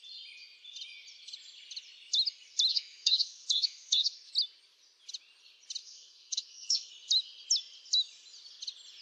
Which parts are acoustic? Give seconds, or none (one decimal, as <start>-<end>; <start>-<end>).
0.0-2.7; 4.3-5.8; 6.9-9.0